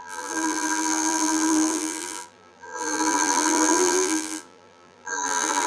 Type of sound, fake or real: fake